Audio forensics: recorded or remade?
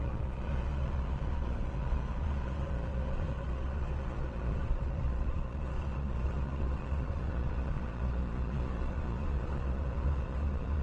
remade